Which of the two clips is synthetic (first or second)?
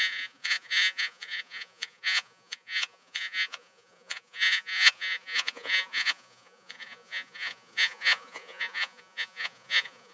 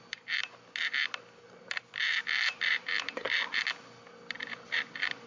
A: first